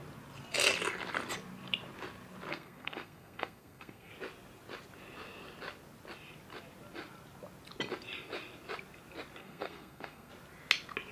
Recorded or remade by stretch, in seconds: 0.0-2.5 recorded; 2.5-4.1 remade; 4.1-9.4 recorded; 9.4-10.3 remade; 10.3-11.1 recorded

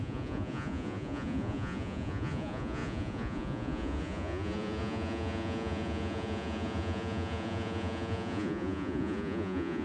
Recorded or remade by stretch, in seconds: 0.0-9.8 remade